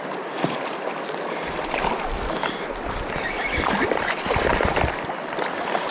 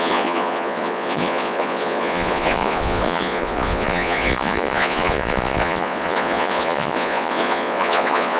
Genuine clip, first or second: first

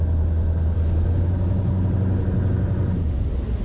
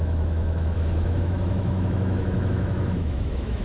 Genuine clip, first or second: first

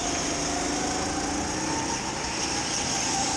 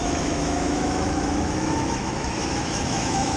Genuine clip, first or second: first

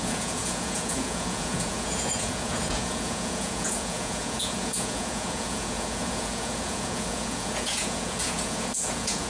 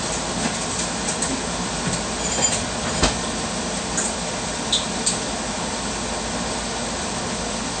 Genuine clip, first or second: second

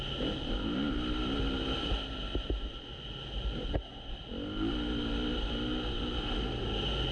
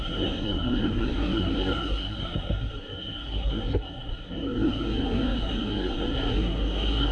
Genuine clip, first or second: first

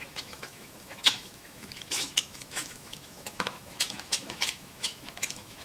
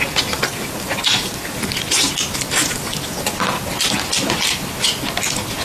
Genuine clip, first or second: second